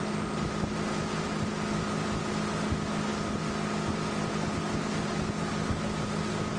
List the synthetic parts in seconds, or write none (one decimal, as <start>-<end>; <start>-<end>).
none